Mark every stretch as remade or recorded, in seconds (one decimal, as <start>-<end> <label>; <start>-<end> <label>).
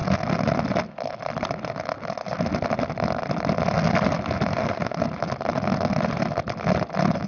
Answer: 0.0-4.5 recorded; 4.5-5.0 remade; 5.0-7.3 recorded